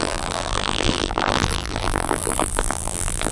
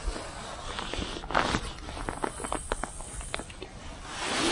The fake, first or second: first